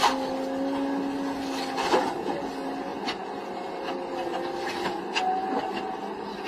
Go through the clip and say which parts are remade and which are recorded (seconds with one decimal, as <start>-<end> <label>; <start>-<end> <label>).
0.0-6.5 recorded